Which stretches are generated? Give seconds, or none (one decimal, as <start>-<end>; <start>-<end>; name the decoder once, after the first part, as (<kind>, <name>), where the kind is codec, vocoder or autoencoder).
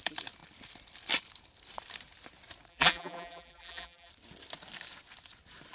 2.7-4.1 (vocoder, BigVGAN v2)